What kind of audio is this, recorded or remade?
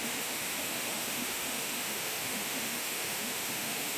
remade